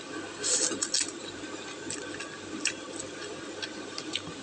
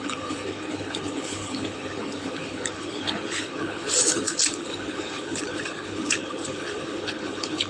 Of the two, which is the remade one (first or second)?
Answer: second